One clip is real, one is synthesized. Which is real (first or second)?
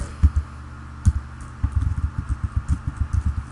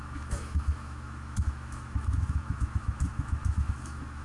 first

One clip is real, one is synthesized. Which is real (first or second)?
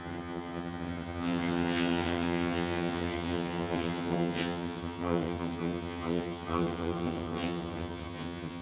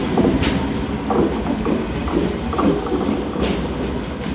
second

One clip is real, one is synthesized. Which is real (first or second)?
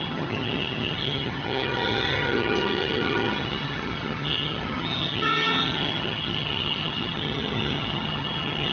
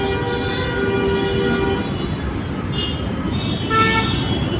second